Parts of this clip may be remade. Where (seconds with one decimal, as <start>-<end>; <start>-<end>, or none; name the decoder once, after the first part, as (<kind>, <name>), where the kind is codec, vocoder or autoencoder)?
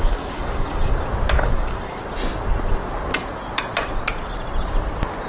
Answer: 0.0-0.9 (codec, DAC); 1.4-2.0